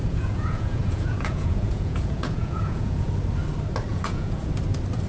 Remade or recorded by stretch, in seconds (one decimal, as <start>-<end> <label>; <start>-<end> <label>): 0.0-3.1 remade; 3.1-3.9 recorded; 3.9-4.5 remade; 4.5-5.1 recorded